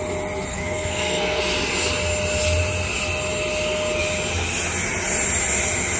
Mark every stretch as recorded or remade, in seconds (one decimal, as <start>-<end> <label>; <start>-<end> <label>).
0.0-0.5 recorded; 0.5-1.4 remade; 1.4-6.0 recorded

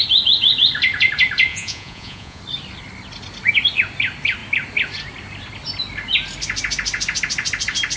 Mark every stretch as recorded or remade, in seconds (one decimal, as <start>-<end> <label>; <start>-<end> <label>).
0.0-1.5 recorded; 1.5-2.4 remade; 2.4-8.0 recorded

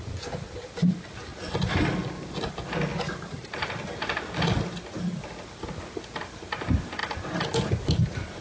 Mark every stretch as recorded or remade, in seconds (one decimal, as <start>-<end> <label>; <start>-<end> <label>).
0.0-8.4 recorded

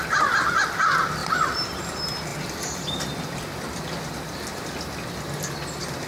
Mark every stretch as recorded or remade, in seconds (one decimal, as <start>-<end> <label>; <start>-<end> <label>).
0.0-1.2 recorded; 1.2-1.8 remade; 1.8-6.1 recorded

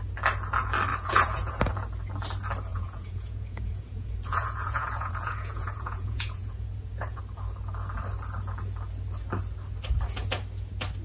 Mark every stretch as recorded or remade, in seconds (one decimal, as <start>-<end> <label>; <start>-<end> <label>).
0.0-0.9 recorded; 0.9-1.6 remade; 1.6-2.7 recorded; 2.7-7.2 remade; 7.2-11.0 recorded

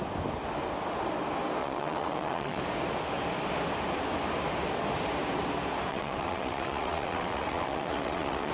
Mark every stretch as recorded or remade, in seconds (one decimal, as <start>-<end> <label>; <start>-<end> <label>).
0.0-1.6 recorded; 1.6-2.6 remade; 2.6-5.9 recorded; 5.9-8.5 remade

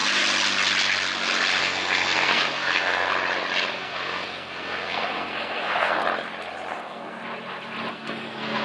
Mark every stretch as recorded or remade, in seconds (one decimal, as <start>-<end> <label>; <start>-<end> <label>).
0.0-1.6 recorded; 1.6-3.1 remade; 3.1-3.7 recorded; 3.7-6.0 remade; 6.0-6.7 recorded; 6.7-7.2 remade; 7.2-7.9 recorded; 7.9-8.6 remade